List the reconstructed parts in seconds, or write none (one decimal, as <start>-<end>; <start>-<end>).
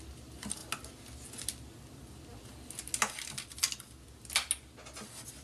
none